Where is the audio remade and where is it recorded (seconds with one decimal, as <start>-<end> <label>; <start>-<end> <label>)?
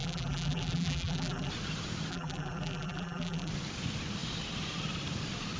0.0-1.5 remade; 1.5-2.1 recorded; 2.1-3.5 remade; 3.5-5.6 recorded